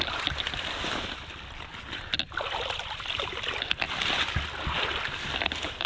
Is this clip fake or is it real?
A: real